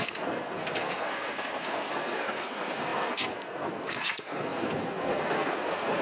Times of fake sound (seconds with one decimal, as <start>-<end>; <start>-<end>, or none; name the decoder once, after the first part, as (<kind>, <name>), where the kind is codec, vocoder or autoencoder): 0.0-6.0 (codec, SNAC)